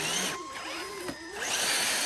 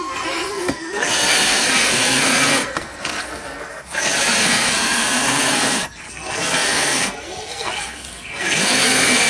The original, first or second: first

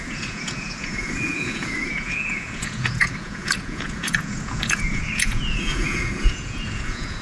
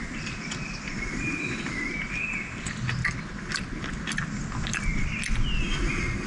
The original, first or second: second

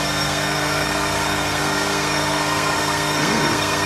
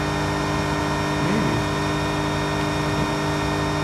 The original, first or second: second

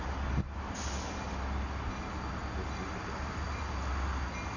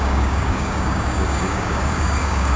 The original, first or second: first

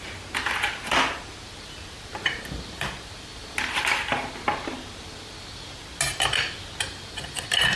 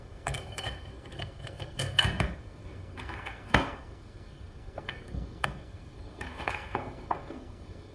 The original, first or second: first